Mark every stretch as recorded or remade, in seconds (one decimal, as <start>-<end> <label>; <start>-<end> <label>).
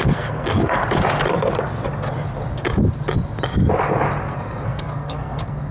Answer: 0.0-0.8 remade; 0.8-4.2 recorded; 4.2-5.7 remade